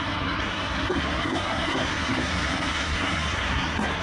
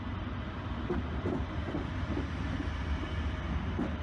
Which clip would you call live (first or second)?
second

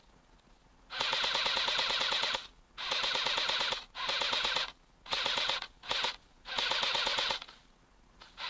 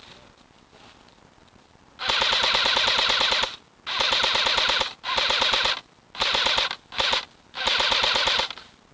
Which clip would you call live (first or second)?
second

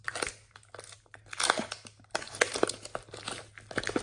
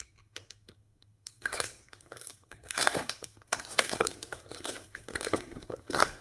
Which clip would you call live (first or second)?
first